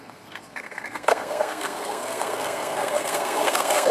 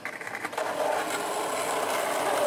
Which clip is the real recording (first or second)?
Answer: second